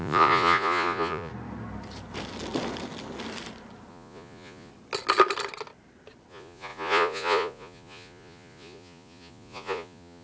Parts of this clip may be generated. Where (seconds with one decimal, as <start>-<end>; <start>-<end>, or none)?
0.0-1.3; 3.9-4.7; 6.3-10.2